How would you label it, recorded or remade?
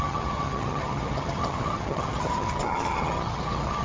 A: remade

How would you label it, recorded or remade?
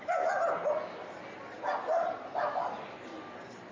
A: recorded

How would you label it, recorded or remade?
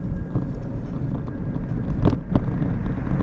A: recorded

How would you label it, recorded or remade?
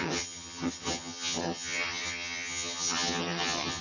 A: remade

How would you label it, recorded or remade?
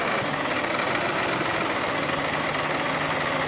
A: recorded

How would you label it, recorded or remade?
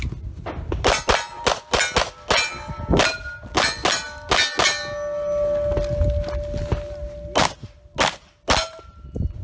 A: recorded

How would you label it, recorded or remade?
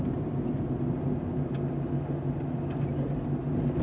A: recorded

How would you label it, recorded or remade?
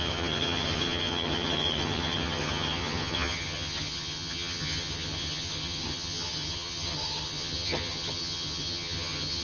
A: remade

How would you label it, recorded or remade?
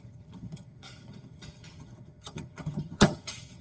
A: remade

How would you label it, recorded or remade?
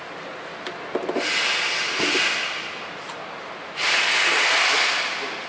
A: recorded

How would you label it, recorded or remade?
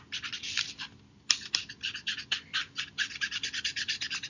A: recorded